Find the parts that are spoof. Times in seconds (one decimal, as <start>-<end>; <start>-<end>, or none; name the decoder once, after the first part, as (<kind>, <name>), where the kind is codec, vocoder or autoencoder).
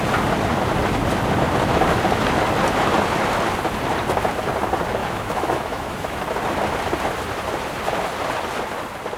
5.0-6.2 (autoencoder, DAC-VAE)